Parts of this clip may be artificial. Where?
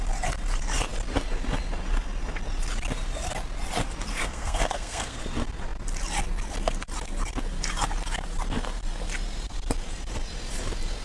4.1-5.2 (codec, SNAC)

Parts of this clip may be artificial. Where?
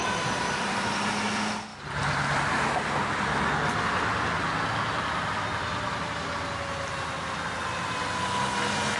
none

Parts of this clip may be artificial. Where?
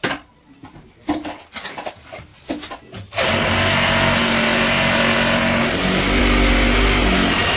none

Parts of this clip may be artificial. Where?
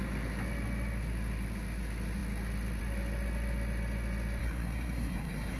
4.4-5.6 (codec, SNAC)